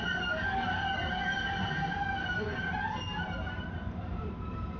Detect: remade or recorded recorded